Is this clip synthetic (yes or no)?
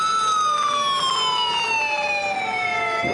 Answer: no